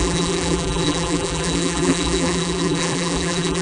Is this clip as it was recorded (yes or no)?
no